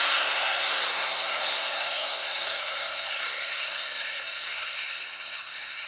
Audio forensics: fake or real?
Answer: fake